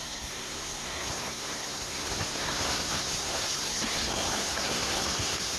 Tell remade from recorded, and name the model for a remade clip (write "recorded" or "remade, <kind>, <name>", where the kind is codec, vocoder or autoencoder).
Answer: remade, codec, SNAC